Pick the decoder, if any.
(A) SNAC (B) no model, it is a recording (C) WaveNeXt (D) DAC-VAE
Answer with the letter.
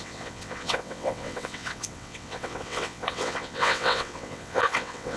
C